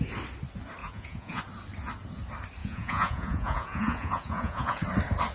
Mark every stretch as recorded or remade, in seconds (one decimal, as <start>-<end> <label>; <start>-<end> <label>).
0.0-0.8 recorded; 0.8-1.4 remade; 1.4-2.6 recorded; 2.6-4.8 remade; 4.8-5.3 recorded